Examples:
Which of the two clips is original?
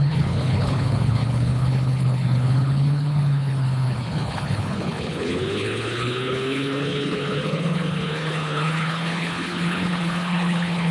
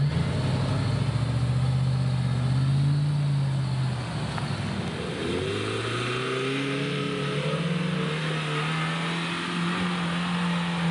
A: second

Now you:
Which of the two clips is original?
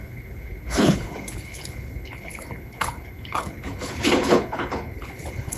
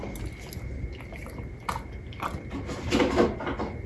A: second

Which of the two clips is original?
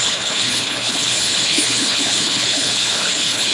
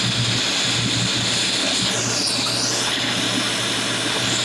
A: second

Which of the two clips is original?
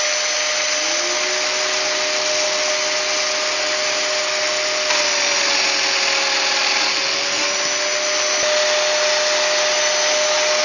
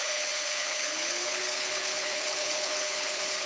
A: first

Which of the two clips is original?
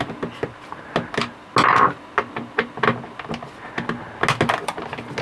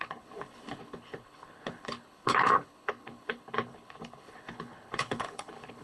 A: first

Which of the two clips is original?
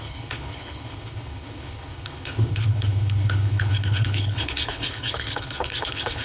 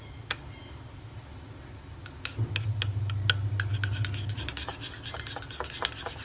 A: second